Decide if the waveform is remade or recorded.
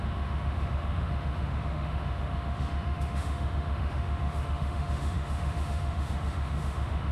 remade